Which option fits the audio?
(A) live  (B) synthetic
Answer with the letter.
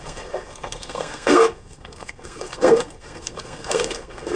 B